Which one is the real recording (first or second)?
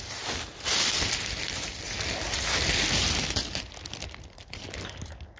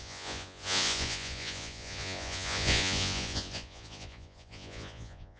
first